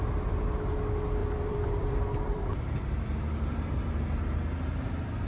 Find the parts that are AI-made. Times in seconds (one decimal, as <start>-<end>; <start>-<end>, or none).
1.2-4.4